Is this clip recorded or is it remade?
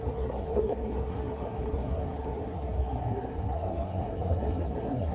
remade